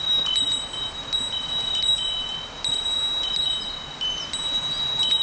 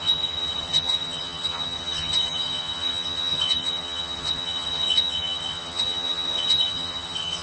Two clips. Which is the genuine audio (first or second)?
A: first